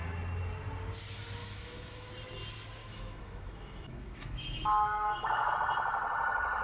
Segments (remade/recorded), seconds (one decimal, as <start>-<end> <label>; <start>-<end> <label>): 0.0-1.4 recorded; 1.4-2.1 remade; 2.1-2.8 recorded; 2.8-5.5 remade; 5.5-6.6 recorded